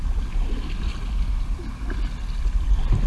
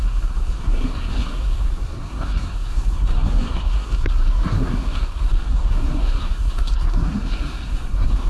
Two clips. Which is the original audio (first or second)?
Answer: first